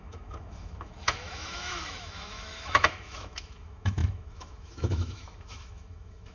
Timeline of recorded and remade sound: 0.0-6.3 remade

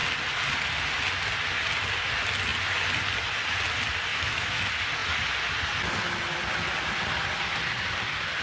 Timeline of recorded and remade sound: 0.0-4.1 recorded; 4.1-4.6 remade; 4.6-8.4 recorded